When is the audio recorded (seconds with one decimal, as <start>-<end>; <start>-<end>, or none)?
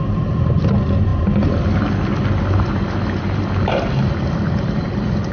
0.0-5.3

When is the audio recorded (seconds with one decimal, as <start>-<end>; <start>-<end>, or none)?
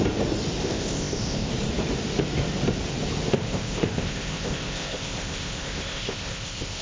0.0-0.6; 1.5-3.3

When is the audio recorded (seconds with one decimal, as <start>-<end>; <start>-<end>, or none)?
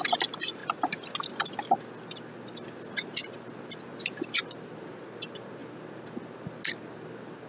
0.0-7.5